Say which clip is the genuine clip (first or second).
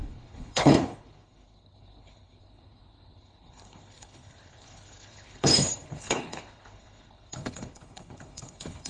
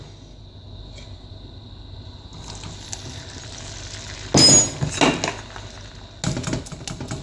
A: second